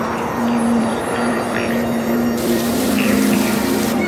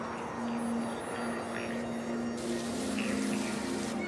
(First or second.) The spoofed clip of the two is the first